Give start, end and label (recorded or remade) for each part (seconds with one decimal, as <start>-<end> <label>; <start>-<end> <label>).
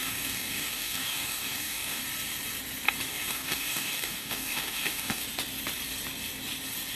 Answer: 0.0-2.0 remade; 2.0-3.1 recorded; 3.1-5.2 remade; 5.2-6.9 recorded